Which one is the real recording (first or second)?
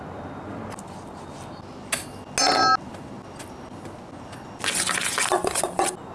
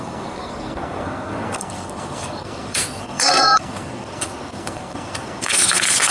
first